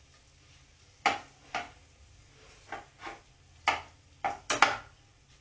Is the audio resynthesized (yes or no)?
no